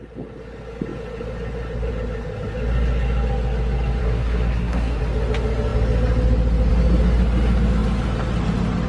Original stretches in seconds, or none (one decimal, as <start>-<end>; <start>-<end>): 0.0-4.0; 5.0-8.9